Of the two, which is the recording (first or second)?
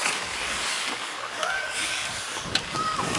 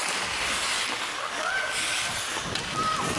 second